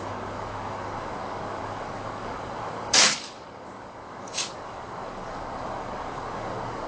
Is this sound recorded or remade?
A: remade